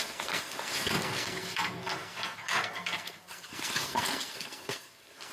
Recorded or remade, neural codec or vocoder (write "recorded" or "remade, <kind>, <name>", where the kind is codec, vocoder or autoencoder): remade, codec, SNAC